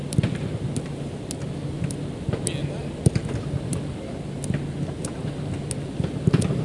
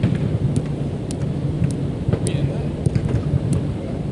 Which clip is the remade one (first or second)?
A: second